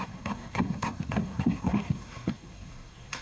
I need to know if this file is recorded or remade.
remade